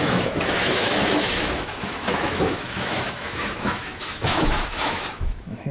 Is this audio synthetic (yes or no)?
yes